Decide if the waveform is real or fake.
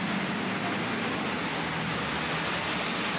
real